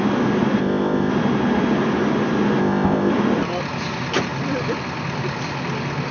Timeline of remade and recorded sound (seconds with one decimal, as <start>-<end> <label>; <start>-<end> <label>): 0.0-0.6 recorded; 0.6-1.1 remade; 1.1-2.6 recorded; 2.6-3.1 remade; 3.1-6.1 recorded